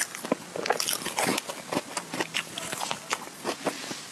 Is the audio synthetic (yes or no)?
no